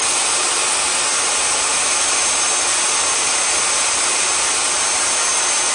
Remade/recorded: recorded